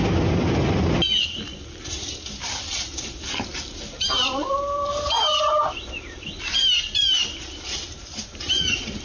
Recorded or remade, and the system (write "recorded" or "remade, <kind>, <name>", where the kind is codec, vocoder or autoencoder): recorded